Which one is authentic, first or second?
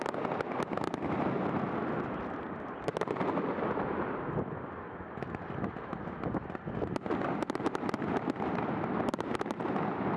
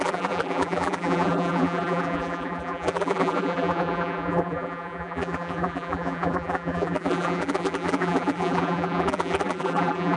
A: first